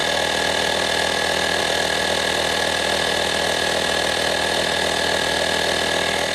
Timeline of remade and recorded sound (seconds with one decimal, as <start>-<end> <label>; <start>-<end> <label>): 0.0-6.3 recorded